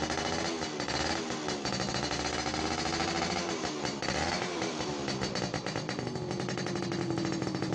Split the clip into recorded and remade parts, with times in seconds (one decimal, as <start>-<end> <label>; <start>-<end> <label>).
0.0-3.0 recorded; 3.0-5.3 remade; 5.3-7.7 recorded